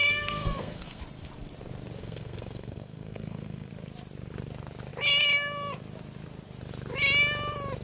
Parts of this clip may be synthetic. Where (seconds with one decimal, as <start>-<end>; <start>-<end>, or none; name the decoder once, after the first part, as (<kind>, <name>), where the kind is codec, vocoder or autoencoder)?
0.0-1.0 (codec, SNAC); 2.0-3.7